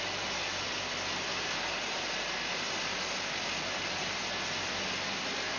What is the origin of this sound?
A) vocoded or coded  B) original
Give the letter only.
B